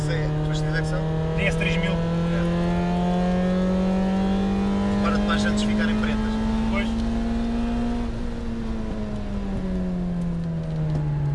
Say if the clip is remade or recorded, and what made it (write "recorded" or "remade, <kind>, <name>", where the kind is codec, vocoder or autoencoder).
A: recorded